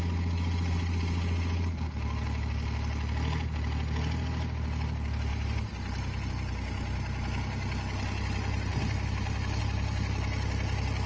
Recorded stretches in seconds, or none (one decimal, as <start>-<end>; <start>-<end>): 0.0-11.1